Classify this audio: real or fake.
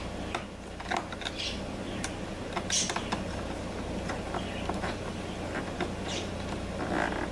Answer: real